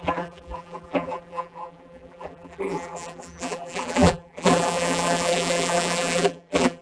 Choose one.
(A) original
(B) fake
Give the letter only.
B